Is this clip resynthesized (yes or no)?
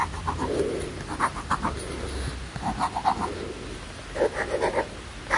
no